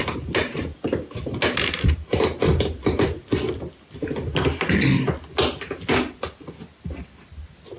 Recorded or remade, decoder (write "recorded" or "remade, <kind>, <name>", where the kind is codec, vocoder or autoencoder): recorded